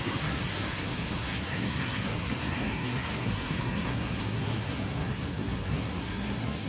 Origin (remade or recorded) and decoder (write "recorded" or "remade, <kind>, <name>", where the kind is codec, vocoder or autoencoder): remade, codec, SNAC